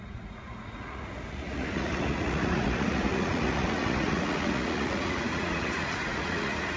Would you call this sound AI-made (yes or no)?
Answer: yes